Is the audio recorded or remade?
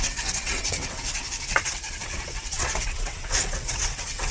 remade